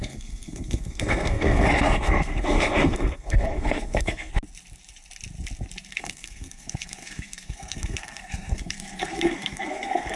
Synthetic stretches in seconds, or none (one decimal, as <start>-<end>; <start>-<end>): 0.0-4.3; 5.9-10.2